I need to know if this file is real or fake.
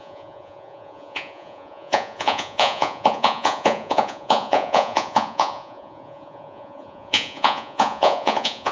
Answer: fake